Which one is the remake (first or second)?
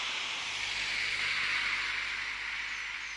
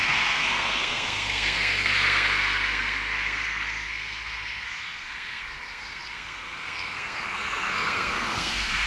second